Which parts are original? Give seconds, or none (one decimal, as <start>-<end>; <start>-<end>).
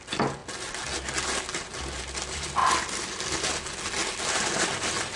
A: 0.0-5.2